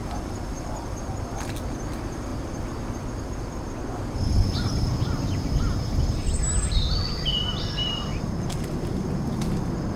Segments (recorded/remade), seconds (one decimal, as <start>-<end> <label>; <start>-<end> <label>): 0.0-10.0 recorded